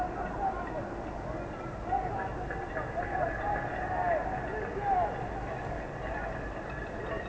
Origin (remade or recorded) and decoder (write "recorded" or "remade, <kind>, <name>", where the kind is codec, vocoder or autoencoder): recorded